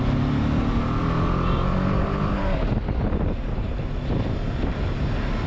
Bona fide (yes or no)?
yes